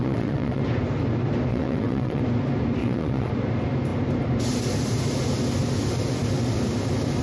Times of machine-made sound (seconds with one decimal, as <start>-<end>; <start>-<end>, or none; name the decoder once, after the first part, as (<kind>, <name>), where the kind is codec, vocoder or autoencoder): 0.0-0.6 (vocoder, WaveNeXt); 1.5-2.2; 2.8-3.3